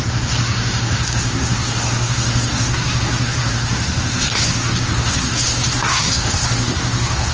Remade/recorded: remade